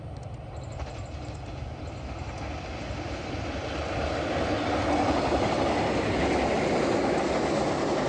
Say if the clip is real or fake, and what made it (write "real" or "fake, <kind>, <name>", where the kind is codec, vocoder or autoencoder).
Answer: real